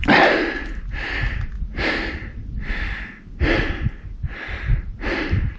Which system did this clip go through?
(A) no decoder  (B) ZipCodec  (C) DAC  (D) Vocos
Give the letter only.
A